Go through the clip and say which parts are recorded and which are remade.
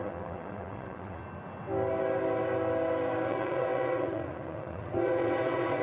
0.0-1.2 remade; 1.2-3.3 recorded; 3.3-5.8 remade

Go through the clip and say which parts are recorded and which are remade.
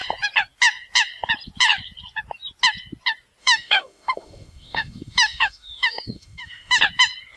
0.0-3.4 recorded; 3.4-6.8 remade; 6.8-7.4 recorded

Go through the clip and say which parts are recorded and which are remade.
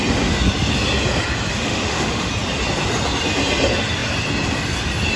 0.0-1.5 recorded; 1.5-2.3 remade; 2.3-5.2 recorded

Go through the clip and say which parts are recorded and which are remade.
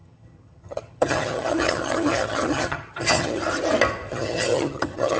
0.0-3.4 remade; 3.4-4.1 recorded; 4.1-5.2 remade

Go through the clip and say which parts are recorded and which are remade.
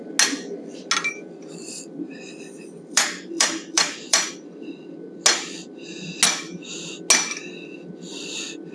0.0-1.7 recorded; 1.7-4.3 remade; 4.3-8.7 recorded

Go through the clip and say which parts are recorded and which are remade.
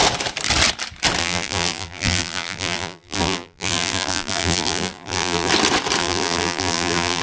0.0-1.2 recorded; 1.2-5.5 remade; 5.5-6.0 recorded; 6.0-7.2 remade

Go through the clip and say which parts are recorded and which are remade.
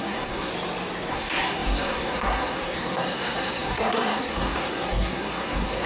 0.0-0.5 remade; 0.5-1.1 recorded; 1.1-5.9 remade